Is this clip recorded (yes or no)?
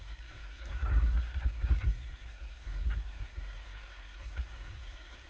no